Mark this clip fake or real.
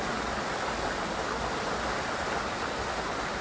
real